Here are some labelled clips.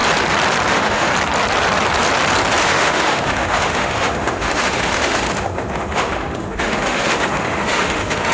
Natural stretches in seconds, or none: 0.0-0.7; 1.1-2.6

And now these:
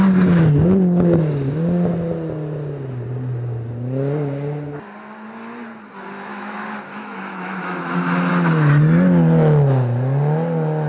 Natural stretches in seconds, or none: 0.0-6.3; 8.3-10.9

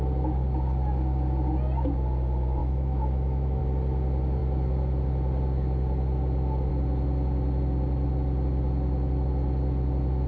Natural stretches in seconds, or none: 0.0-2.6; 3.6-10.3

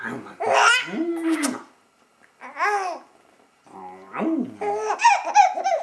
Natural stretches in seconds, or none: 0.0-5.8

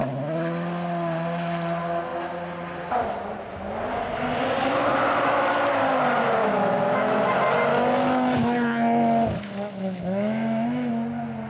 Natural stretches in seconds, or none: 0.0-6.4; 7.3-7.7; 10.9-11.5

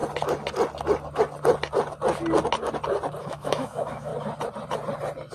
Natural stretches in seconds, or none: 0.0-3.2; 4.1-5.3

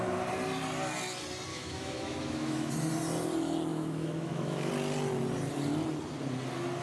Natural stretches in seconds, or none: 0.0-1.5; 2.7-3.7; 4.7-6.8

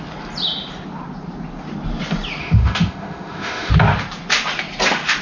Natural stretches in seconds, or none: 0.0-2.4; 3.7-5.2